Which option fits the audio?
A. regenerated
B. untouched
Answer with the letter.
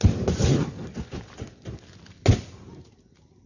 B